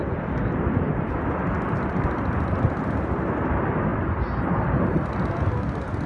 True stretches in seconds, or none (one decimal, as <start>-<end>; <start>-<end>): 0.0-6.1